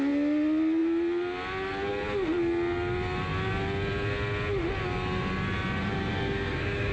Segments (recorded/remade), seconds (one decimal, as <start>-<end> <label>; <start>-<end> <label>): 0.0-6.1 recorded; 6.1-6.9 remade